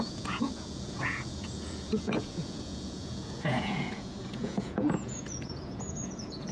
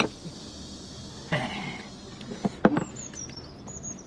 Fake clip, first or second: first